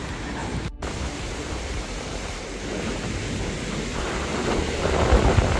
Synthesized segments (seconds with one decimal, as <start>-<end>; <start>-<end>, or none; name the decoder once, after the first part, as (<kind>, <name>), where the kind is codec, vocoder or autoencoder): 0.4-3.2 (vocoder, BigVGAN v2); 3.9-4.5

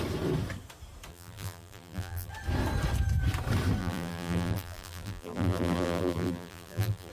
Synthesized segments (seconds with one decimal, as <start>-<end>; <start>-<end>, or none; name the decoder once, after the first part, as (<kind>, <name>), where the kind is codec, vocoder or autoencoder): 1.1-2.3 (vocoder, BigVGAN v2); 3.8-7.1

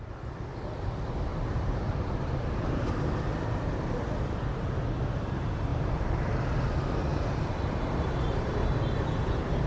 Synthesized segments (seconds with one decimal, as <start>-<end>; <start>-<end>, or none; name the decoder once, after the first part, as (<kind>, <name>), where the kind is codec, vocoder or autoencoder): 1.3-3.0 (vocoder, BigVGAN v2); 5.7-6.3; 7.1-8.8

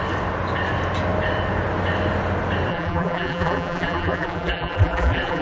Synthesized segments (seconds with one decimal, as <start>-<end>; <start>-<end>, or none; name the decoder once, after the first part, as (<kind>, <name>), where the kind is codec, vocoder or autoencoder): 2.7-5.4 (vocoder, BigVGAN v2)

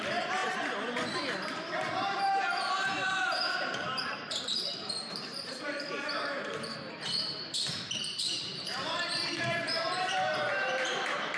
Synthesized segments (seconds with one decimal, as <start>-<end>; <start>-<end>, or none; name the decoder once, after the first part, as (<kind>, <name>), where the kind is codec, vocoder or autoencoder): 0.0-11.4 (vocoder, BigVGAN v2)

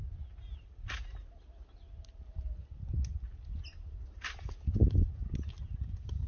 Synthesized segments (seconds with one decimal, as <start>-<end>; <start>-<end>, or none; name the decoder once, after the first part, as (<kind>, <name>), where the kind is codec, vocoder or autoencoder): 0.0-0.9 (vocoder, BigVGAN v2)

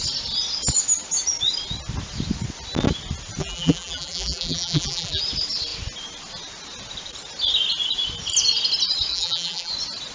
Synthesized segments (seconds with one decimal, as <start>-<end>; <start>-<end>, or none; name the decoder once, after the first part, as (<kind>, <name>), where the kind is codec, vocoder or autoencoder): 3.4-5.2 (vocoder, BigVGAN v2); 9.1-9.7

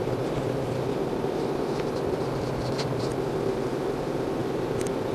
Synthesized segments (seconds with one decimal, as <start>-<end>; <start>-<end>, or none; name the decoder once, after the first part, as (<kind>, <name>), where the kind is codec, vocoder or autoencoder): 0.0-3.1 (vocoder, BigVGAN v2); 4.4-5.1